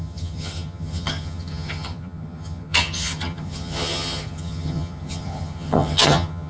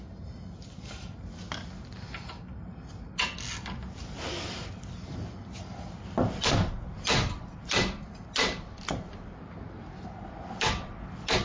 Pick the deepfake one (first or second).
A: first